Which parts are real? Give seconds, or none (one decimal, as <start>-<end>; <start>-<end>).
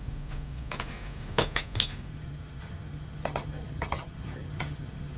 0.0-2.1